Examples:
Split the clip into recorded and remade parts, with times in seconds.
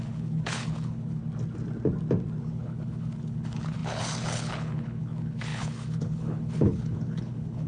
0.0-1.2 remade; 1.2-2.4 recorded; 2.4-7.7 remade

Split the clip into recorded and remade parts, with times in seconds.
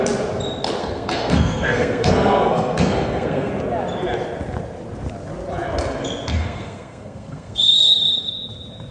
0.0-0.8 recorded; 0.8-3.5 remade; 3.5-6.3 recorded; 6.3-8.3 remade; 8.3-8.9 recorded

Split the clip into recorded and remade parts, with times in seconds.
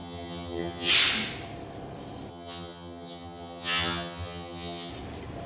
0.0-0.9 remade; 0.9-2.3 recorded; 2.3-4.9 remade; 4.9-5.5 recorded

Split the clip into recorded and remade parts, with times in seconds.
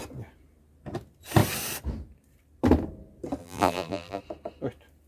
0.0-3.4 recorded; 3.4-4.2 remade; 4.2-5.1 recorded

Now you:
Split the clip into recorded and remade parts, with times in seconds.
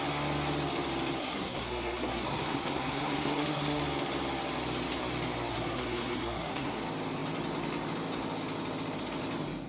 0.0-1.2 recorded; 1.2-3.8 remade; 3.8-5.5 recorded; 5.5-6.8 remade; 6.8-9.7 recorded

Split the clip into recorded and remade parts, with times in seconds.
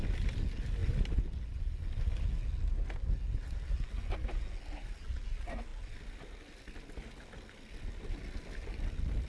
0.0-9.3 recorded